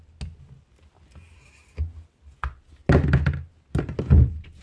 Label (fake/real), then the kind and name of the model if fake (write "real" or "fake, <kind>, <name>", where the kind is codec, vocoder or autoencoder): real